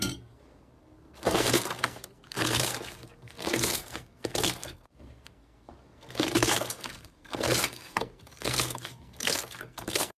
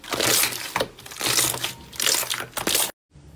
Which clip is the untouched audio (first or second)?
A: second